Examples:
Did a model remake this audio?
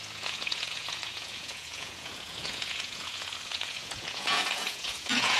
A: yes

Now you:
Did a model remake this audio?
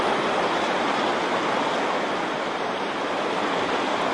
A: no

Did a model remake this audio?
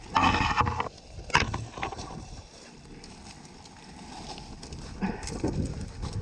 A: no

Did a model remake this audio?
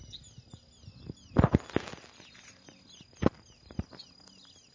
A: no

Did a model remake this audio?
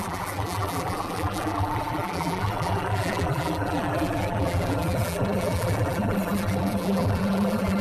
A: yes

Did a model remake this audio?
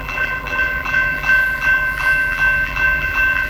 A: yes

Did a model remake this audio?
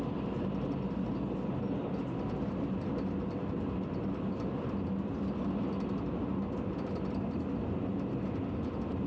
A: no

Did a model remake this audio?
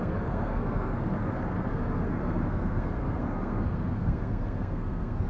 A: yes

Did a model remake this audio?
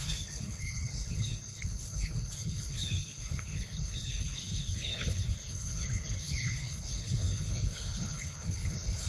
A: yes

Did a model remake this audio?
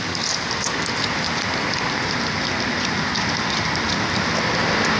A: no